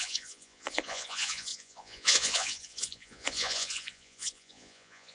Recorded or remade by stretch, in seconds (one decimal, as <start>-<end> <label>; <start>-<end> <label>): 0.0-5.1 remade